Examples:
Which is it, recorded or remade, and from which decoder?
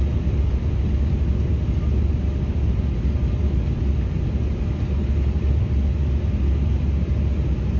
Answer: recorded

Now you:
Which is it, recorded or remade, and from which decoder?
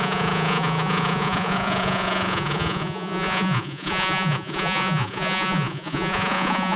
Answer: remade, vocoder, Vocos